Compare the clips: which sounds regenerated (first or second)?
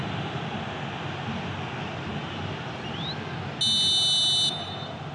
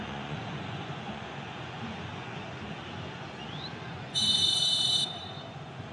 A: second